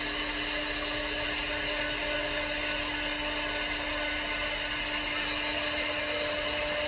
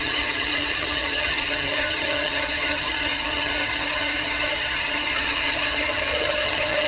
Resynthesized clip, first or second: second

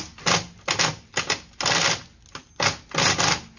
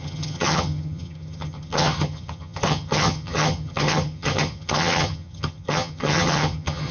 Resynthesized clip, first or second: second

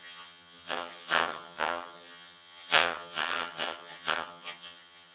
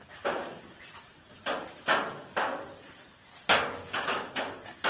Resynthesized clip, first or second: first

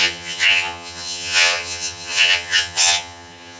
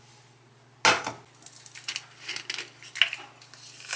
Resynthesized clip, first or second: first